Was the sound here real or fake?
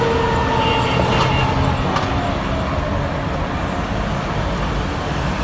real